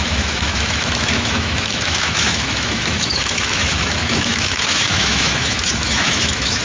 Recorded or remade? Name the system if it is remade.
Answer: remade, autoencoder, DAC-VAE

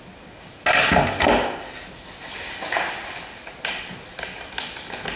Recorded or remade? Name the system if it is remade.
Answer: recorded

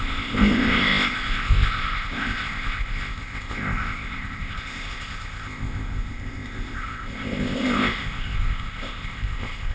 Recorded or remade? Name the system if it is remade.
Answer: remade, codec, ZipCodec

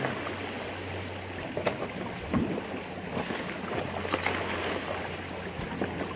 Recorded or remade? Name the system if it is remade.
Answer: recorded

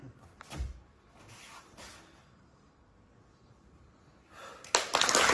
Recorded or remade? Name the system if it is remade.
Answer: recorded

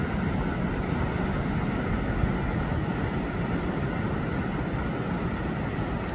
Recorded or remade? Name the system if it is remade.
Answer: recorded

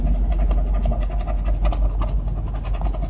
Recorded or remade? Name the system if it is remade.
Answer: recorded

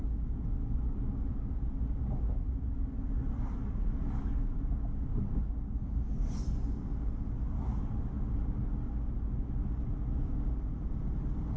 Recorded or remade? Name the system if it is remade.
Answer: recorded